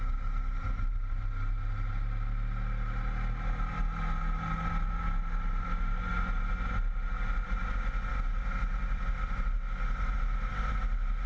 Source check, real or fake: real